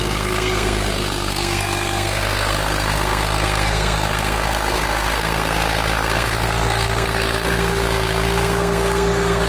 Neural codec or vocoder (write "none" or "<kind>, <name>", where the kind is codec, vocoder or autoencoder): codec, SNAC